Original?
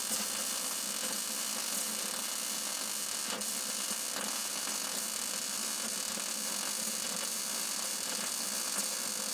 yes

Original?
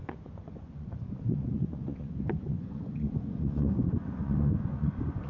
no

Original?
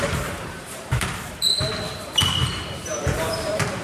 no